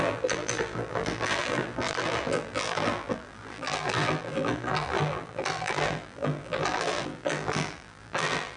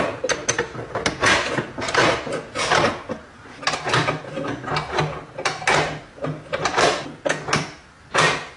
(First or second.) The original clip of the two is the second